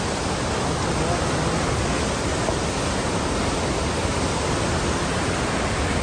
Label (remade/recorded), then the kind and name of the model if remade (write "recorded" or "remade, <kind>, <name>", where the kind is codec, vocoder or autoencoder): recorded